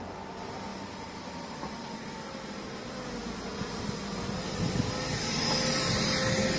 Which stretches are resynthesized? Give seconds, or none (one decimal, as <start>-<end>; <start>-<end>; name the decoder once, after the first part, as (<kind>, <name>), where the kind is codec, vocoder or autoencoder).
0.7-2.0 (vocoder, BigVGAN v2); 3.5-6.6